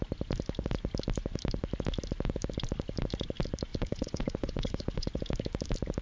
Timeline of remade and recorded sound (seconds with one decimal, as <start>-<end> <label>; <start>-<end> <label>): 0.0-3.7 recorded; 3.7-5.2 remade; 5.2-6.0 recorded

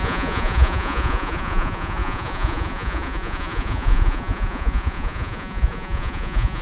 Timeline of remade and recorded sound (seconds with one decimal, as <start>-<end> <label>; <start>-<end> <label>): 0.0-6.6 remade

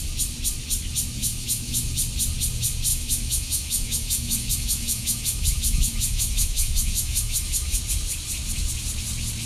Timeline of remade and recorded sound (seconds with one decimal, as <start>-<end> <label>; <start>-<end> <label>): 0.0-1.2 recorded; 1.2-1.9 remade; 1.9-2.9 recorded; 2.9-7.8 remade; 7.8-9.5 recorded

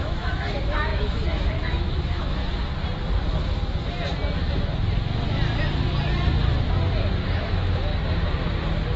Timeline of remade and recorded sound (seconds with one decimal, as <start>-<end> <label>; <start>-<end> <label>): 0.0-2.4 remade; 2.4-7.4 recorded; 7.4-7.9 remade; 7.9-9.0 recorded

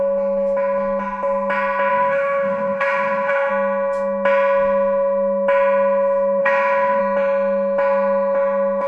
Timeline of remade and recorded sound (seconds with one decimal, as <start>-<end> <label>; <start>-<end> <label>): 0.0-1.9 recorded; 1.9-3.5 remade; 3.5-6.4 recorded; 6.4-7.0 remade; 7.0-8.9 recorded

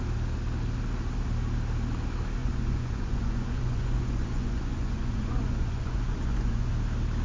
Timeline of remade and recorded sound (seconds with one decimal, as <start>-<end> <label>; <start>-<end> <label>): 0.0-2.4 recorded; 2.4-6.7 remade; 6.7-7.2 recorded

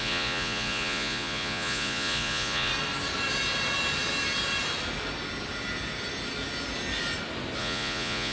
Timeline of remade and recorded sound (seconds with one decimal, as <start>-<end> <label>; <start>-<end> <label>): 0.0-2.7 remade; 2.7-7.6 recorded; 7.6-8.3 remade